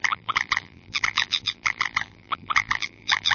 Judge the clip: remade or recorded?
remade